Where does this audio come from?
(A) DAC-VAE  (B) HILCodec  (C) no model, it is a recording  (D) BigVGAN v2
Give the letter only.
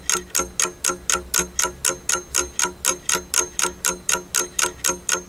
C